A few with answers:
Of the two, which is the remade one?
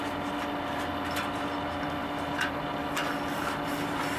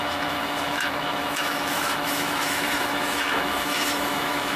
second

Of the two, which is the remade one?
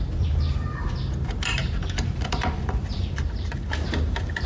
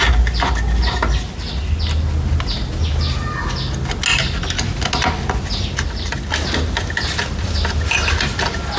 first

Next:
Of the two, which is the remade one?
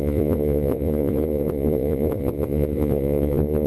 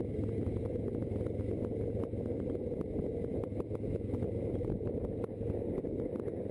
first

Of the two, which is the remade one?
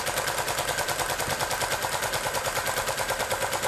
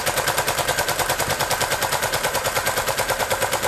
second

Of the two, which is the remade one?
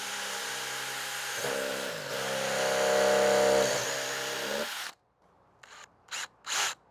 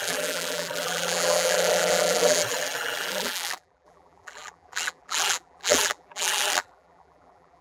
second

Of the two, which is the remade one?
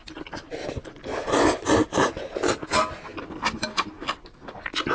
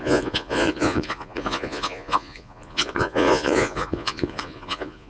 second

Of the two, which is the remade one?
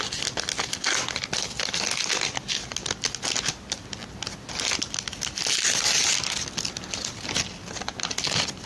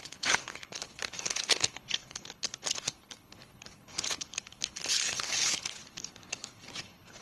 second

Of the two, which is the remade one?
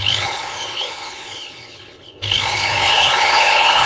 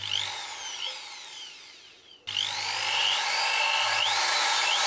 first